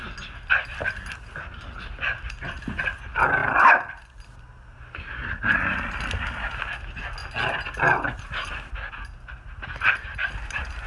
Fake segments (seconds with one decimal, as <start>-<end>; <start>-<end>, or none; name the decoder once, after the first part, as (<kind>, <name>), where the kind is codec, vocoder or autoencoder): none